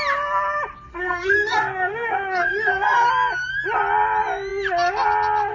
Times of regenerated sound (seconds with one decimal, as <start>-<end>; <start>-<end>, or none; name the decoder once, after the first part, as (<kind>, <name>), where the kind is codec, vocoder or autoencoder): 0.9-3.1 (codec, SNAC)